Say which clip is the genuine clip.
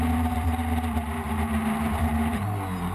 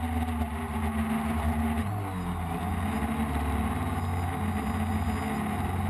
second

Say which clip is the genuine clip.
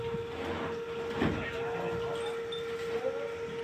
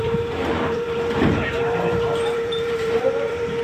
first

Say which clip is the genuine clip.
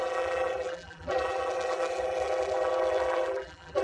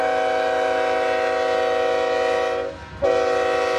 second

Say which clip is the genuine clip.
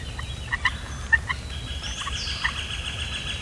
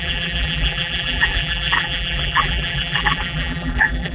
first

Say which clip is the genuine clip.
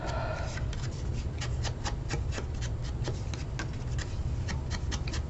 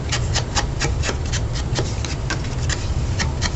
first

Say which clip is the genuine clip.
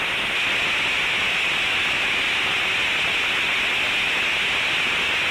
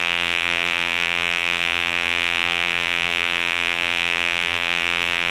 first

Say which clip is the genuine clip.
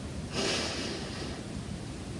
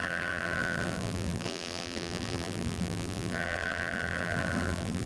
first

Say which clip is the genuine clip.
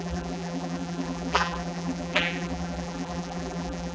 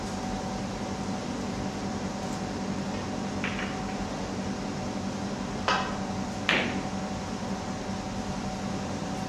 second